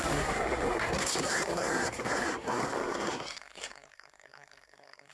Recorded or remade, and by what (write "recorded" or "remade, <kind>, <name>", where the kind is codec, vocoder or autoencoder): remade, codec, SNAC